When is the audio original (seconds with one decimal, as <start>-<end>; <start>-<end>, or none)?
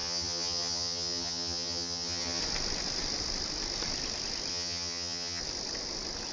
2.4-4.5; 5.4-6.3